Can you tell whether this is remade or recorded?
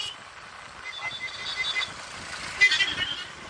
recorded